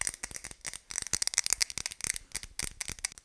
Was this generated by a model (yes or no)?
no